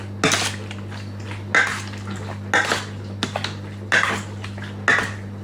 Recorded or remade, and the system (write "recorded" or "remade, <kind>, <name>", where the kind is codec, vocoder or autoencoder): recorded